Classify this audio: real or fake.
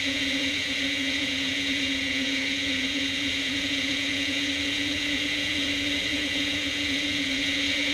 fake